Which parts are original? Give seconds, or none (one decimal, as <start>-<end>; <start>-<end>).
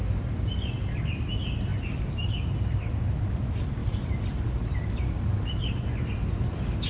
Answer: 0.0-1.7; 2.7-3.8; 5.2-6.9